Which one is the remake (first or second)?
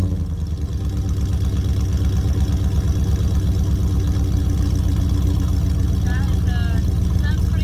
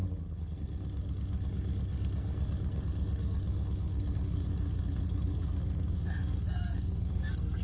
second